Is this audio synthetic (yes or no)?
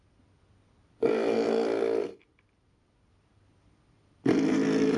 no